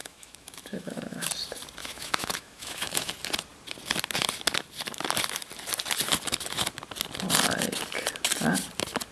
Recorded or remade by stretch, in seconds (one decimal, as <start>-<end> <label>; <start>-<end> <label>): 0.0-1.3 remade; 1.3-1.8 recorded; 1.8-3.1 remade; 3.1-9.1 recorded